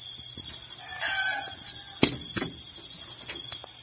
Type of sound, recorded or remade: recorded